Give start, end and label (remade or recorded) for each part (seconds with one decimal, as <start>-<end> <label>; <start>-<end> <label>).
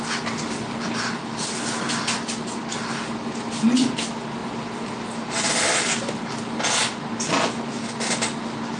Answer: 0.0-8.8 recorded